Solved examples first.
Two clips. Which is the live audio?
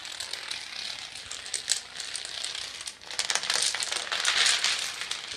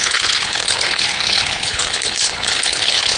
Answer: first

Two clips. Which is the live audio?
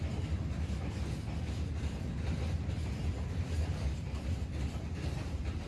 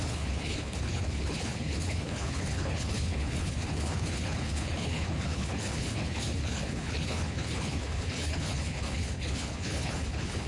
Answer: first